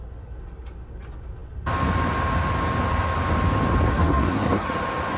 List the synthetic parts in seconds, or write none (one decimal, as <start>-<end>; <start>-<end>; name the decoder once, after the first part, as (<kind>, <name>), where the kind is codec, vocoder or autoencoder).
3.9-4.7 (codec, SNAC)